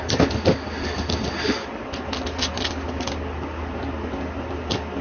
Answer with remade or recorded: recorded